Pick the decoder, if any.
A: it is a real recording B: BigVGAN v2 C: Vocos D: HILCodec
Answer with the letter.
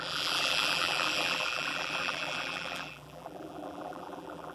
B